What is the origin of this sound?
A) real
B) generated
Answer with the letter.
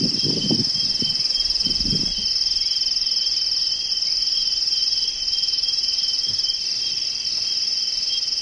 A